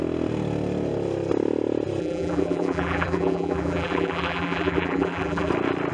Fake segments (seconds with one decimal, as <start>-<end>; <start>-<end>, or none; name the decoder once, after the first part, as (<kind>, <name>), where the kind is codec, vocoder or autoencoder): 2.0-5.5 (vocoder, BigVGAN v2)